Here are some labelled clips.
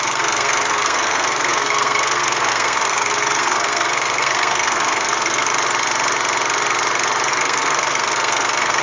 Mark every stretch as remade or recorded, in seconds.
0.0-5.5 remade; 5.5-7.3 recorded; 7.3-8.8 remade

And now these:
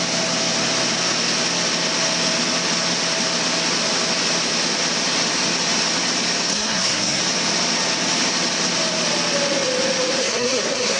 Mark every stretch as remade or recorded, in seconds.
0.0-6.5 recorded; 6.5-7.2 remade; 7.2-10.2 recorded; 10.2-11.0 remade